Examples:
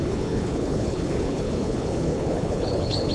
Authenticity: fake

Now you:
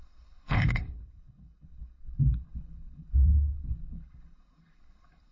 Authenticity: fake